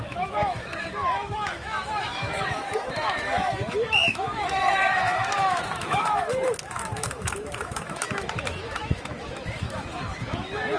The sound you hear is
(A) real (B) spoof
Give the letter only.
B